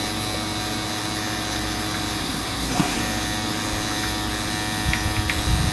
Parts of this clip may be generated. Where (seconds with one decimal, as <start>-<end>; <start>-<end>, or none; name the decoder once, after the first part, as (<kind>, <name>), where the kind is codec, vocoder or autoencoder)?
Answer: 2.2-3.0 (codec, SNAC)